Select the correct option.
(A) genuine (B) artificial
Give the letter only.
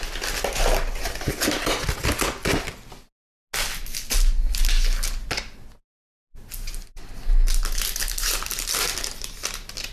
A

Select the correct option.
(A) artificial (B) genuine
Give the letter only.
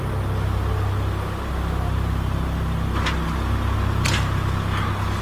B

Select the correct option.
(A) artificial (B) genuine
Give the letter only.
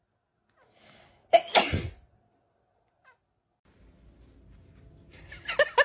B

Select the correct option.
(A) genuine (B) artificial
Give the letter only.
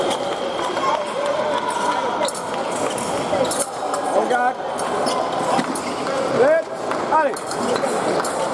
A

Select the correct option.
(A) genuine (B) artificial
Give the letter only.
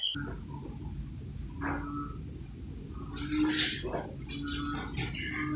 A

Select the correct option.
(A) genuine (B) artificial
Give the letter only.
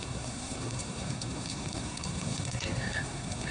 B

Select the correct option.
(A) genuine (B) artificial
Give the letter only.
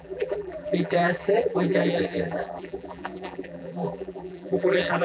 B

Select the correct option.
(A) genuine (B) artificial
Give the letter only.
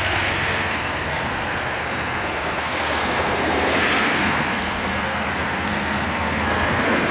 B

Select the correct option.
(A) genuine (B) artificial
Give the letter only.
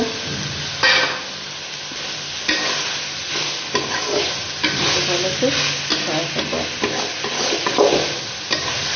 A